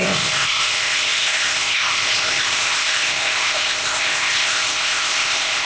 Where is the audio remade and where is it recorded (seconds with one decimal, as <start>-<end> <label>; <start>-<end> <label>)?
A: 0.0-5.7 remade